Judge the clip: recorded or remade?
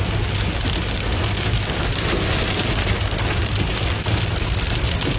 recorded